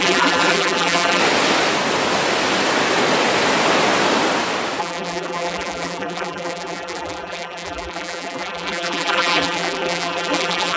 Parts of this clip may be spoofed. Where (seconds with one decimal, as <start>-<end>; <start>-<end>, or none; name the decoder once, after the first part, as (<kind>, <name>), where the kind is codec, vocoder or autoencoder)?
0.0-1.2 (vocoder, BigVGAN v2); 4.8-10.8